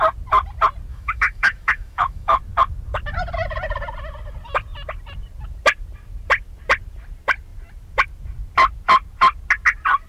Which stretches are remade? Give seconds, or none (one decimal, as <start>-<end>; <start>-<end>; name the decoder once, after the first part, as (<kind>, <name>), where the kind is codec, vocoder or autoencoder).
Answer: 0.9-2.4 (autoencoder, DAC-VAE)